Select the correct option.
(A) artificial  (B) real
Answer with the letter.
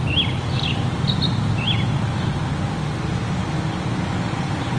B